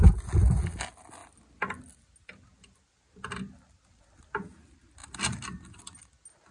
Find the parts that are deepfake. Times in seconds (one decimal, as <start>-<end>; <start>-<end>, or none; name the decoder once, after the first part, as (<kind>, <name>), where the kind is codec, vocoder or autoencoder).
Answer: 5.0-5.8 (vocoder, BigVGAN v2)